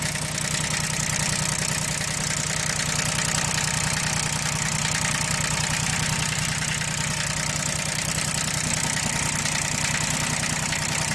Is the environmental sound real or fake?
real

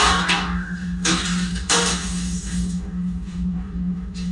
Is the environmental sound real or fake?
fake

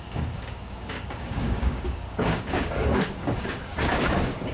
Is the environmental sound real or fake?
fake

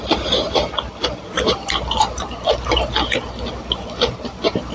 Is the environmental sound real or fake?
real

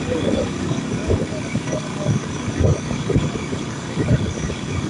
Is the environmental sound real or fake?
fake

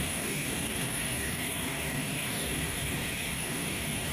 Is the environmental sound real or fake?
fake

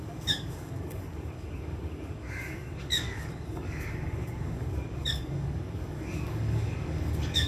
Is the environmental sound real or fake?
fake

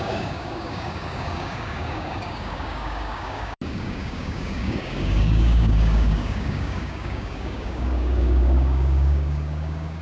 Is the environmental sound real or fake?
fake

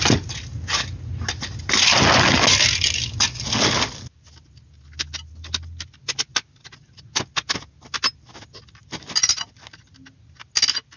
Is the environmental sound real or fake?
real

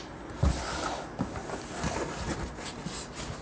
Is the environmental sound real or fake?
real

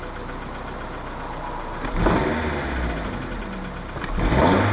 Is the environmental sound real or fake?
real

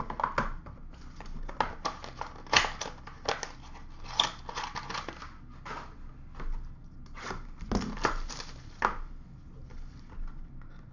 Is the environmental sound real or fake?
real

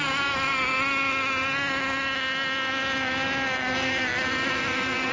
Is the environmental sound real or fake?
real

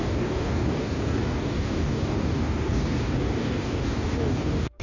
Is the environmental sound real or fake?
fake